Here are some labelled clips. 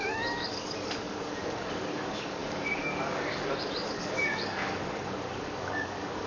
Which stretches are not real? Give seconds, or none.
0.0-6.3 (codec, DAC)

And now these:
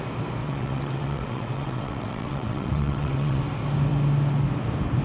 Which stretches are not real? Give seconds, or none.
0.4-3.4 (vocoder, WaveNeXt)